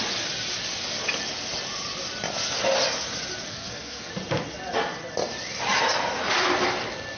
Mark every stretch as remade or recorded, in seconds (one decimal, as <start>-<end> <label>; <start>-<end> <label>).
0.0-3.5 recorded; 3.5-4.1 remade; 4.1-7.2 recorded